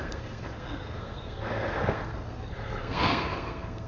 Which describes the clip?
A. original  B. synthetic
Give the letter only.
B